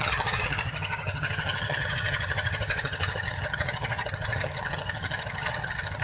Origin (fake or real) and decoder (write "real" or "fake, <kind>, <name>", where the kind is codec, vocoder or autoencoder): fake, vocoder, HiFi-GAN